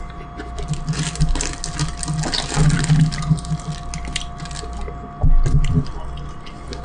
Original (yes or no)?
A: yes